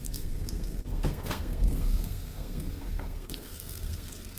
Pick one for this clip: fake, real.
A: fake